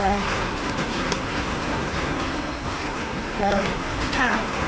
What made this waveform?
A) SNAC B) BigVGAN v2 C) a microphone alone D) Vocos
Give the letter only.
A